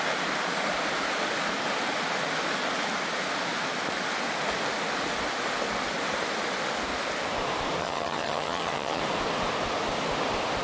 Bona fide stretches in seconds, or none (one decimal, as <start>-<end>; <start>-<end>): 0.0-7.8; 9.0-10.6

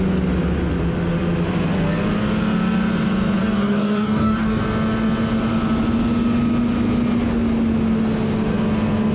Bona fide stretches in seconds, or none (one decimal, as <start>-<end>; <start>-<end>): 0.0-3.4; 4.6-9.1

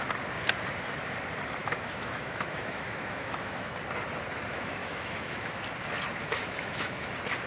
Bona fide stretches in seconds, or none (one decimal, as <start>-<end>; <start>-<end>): 0.0-1.6; 3.7-4.8; 5.6-6.2; 7.1-7.5

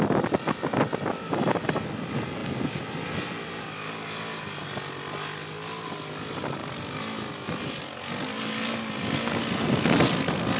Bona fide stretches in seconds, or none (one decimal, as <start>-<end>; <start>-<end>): 0.0-10.6

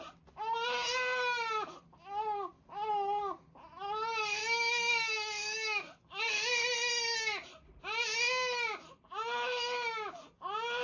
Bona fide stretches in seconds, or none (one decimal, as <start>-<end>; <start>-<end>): 0.0-4.4; 6.2-10.8

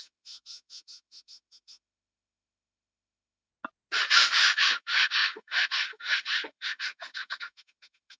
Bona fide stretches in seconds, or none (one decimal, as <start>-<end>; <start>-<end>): 3.5-4.1

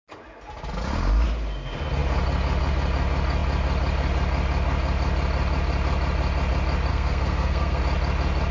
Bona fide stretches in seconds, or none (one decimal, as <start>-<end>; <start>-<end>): 0.0-6.9; 7.8-8.5

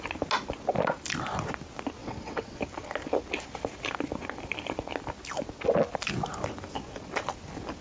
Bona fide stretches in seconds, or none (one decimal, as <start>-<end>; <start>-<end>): 0.0-2.0; 2.6-7.8